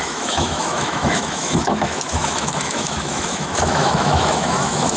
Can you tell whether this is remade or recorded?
remade